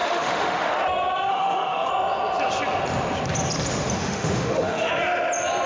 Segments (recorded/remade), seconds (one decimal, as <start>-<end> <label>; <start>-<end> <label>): 0.0-0.7 remade; 0.7-1.3 recorded; 1.3-1.9 remade; 1.9-4.0 recorded; 4.0-4.9 remade; 4.9-5.7 recorded